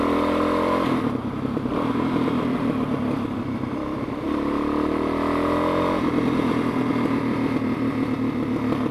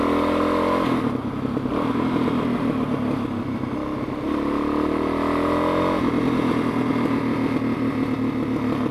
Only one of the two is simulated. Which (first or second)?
first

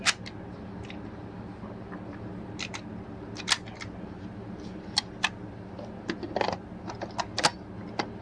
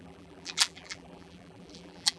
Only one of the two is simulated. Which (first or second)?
second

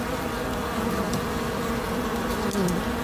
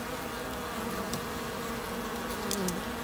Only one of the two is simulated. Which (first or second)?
first